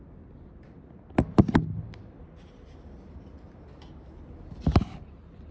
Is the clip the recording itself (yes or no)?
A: yes